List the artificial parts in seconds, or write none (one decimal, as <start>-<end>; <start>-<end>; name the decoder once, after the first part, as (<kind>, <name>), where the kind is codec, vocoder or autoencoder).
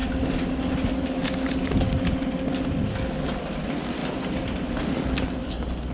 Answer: none